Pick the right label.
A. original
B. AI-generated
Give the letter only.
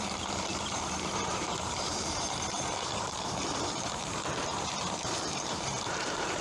B